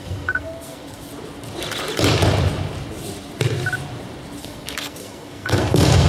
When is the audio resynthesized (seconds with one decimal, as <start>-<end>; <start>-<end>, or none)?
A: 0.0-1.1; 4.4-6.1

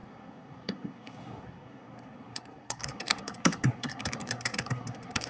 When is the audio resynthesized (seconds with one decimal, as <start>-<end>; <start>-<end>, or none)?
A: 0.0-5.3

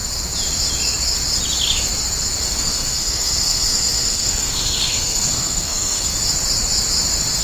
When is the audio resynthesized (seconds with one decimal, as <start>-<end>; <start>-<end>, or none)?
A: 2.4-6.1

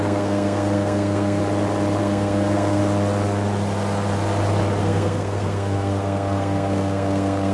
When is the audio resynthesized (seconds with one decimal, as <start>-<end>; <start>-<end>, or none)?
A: 0.0-1.4; 2.0-2.8; 4.8-7.5

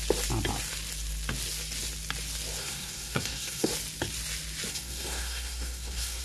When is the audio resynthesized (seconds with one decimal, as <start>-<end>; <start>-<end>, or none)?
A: 2.6-3.7; 4.7-6.2